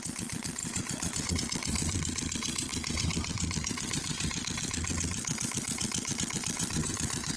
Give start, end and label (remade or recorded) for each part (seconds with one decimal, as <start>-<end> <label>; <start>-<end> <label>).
0.0-7.4 remade